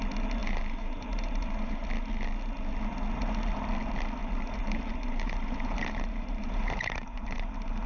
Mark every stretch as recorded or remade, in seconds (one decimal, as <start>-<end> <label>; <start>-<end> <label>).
0.0-0.4 recorded; 0.4-1.8 remade; 1.8-4.2 recorded; 4.2-7.9 remade

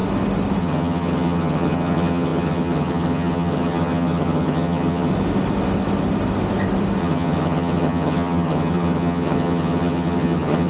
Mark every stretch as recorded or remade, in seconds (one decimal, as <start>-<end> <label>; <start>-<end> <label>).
0.0-0.6 recorded; 0.6-5.1 remade; 5.1-7.0 recorded; 7.0-10.7 remade

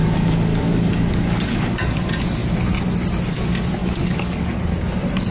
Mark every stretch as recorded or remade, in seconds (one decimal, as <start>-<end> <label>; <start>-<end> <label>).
0.0-2.0 remade; 2.0-3.8 recorded; 3.8-4.6 remade; 4.6-5.3 recorded

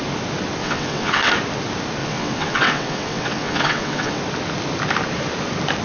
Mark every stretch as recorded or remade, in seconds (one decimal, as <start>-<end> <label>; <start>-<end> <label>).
0.0-0.6 recorded; 0.6-1.3 remade; 1.3-2.0 recorded; 2.0-4.2 remade; 4.2-5.8 recorded

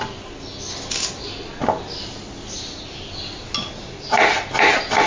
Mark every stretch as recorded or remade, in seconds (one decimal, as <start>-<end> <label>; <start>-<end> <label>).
0.0-5.1 recorded

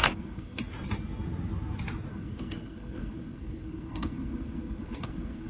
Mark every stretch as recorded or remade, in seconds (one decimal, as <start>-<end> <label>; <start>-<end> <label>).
0.0-0.6 remade; 0.6-2.1 recorded; 2.1-5.5 remade